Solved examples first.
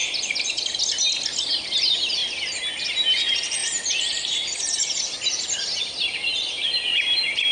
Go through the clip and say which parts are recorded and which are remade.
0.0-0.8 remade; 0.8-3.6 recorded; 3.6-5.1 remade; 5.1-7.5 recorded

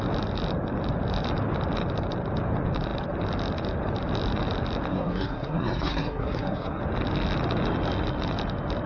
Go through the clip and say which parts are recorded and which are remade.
0.0-4.9 recorded; 4.9-6.8 remade; 6.8-8.9 recorded

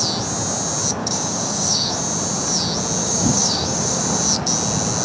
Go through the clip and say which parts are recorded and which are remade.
0.0-1.0 recorded; 1.0-2.0 remade; 2.0-3.0 recorded; 3.0-4.0 remade; 4.0-5.0 recorded